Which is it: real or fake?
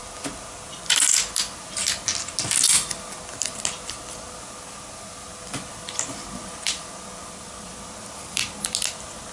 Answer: real